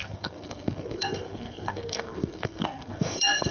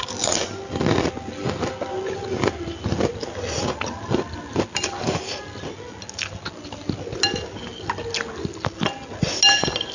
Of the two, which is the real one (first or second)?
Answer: second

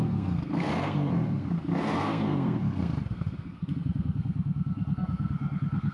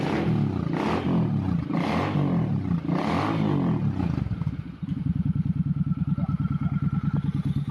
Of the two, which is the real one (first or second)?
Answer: second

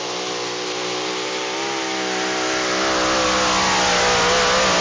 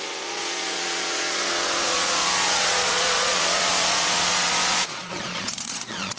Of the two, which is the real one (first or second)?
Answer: first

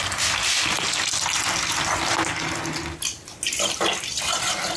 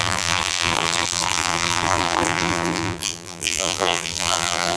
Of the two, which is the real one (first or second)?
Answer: first